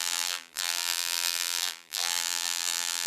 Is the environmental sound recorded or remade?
remade